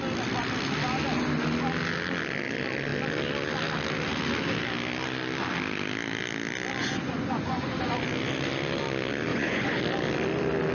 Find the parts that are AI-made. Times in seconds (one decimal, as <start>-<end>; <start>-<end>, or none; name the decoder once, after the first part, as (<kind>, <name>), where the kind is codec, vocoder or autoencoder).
6.8-7.9 (vocoder, Vocos); 9.3-9.8